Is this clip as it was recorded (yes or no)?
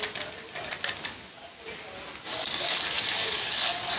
yes